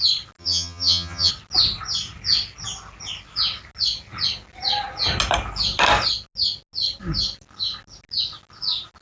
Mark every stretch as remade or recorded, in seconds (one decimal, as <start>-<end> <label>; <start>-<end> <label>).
0.0-0.4 recorded; 0.4-1.3 remade; 1.3-9.0 recorded